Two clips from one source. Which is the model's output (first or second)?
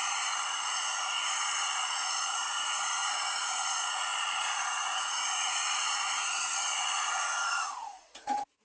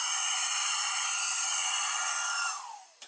first